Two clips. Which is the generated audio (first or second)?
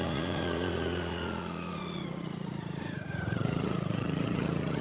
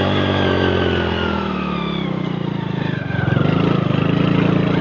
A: first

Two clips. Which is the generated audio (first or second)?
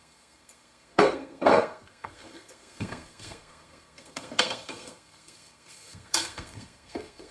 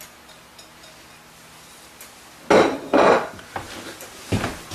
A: first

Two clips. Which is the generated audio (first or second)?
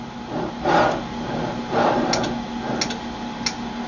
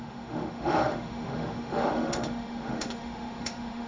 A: second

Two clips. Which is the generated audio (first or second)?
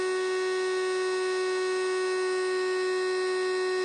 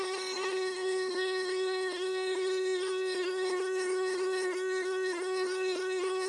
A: second